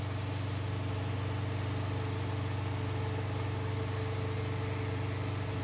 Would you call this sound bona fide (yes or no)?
yes